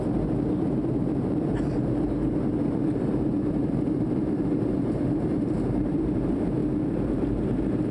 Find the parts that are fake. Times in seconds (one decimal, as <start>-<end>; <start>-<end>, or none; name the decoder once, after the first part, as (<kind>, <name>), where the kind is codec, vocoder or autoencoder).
0.0-6.6 (vocoder, BigVGAN v2); 7.1-7.9